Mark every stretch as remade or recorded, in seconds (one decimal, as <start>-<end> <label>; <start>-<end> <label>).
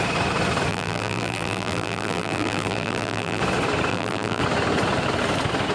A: 0.0-0.7 recorded; 0.7-3.4 remade; 3.4-3.9 recorded; 3.9-4.4 remade; 4.4-5.7 recorded